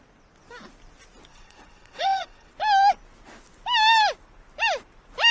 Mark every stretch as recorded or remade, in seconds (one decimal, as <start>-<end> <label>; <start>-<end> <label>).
0.0-1.3 recorded; 1.3-2.5 remade; 2.5-5.3 recorded